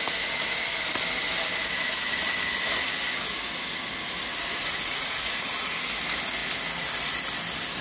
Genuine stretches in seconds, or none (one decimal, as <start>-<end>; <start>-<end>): 0.0-4.6; 5.5-7.8

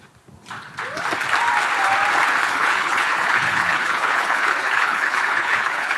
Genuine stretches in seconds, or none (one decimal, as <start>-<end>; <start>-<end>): 0.0-2.4